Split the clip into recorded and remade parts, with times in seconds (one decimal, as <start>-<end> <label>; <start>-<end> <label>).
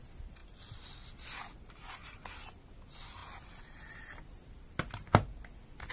0.0-5.9 recorded